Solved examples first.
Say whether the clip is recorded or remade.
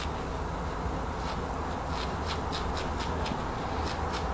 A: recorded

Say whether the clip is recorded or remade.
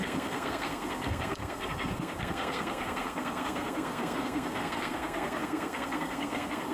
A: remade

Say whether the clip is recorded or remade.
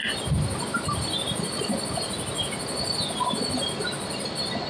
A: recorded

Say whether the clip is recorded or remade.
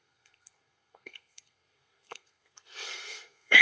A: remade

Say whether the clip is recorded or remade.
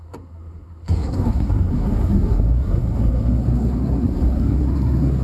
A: remade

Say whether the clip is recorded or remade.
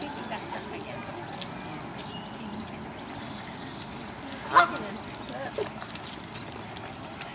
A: recorded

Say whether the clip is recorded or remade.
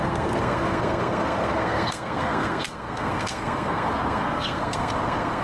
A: remade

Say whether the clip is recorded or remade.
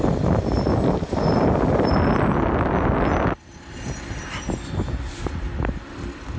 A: recorded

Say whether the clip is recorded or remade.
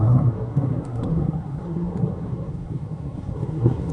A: remade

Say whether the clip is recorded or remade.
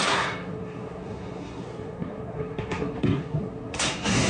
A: remade